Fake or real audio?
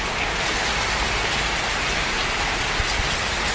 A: real